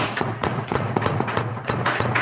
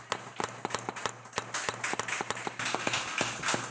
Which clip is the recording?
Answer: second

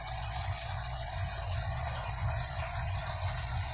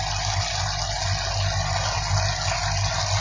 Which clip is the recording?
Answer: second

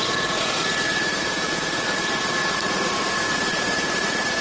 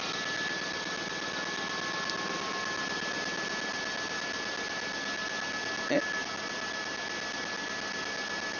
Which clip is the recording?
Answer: second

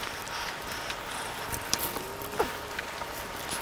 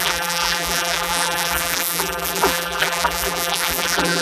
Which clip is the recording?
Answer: first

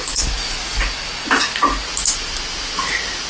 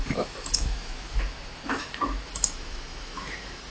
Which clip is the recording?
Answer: first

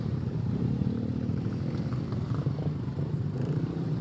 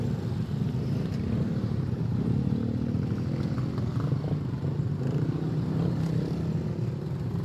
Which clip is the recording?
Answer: second